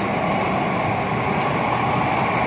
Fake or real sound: real